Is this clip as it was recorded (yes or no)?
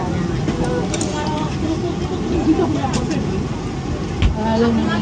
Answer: yes